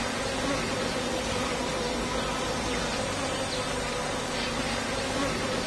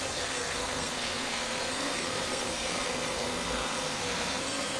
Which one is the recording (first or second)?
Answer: first